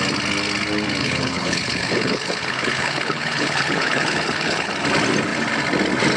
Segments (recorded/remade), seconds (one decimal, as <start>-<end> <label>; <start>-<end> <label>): 0.0-1.0 recorded; 1.0-4.7 remade; 4.7-6.2 recorded